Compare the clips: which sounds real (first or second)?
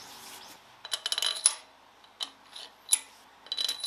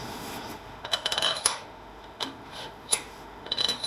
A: first